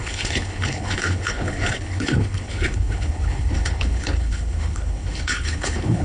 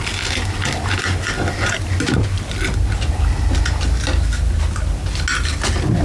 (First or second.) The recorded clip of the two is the second